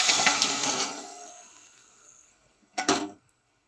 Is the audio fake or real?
fake